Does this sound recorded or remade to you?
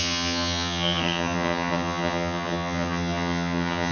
remade